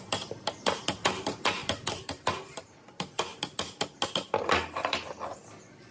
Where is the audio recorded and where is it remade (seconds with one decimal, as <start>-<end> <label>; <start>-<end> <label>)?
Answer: 0.0-1.6 recorded; 1.6-2.3 remade; 2.3-5.9 recorded